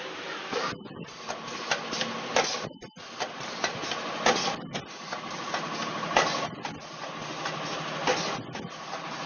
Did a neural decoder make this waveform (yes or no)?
no